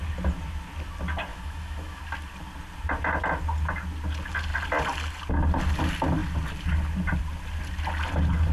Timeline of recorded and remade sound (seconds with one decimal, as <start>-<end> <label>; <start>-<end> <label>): 0.0-1.3 recorded; 1.3-2.0 remade; 2.0-8.5 recorded